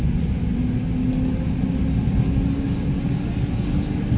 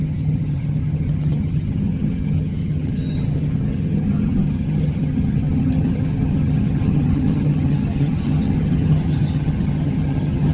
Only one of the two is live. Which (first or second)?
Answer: first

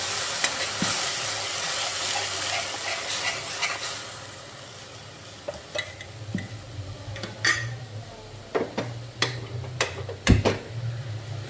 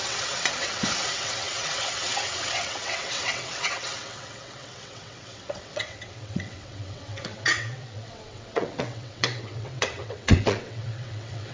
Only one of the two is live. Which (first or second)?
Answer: first